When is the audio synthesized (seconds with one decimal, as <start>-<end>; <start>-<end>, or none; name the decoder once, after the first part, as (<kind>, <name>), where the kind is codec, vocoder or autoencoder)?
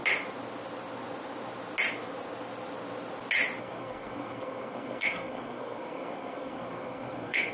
3.6-7.5 (codec, SNAC)